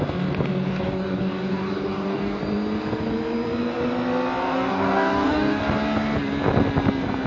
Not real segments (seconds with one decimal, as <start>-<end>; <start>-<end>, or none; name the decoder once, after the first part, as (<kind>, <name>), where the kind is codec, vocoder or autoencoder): 0.7-2.4 (codec, DAC); 4.4-5.6